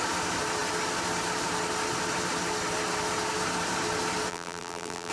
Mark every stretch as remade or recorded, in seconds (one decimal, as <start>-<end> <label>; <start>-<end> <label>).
0.0-4.3 recorded; 4.3-5.1 remade